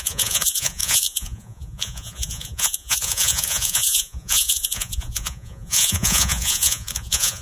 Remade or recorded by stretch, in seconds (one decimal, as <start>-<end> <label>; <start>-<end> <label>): 0.0-7.4 remade